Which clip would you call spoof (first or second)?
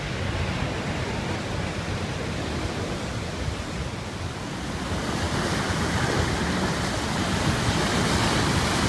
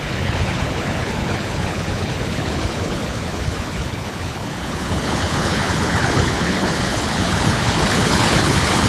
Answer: second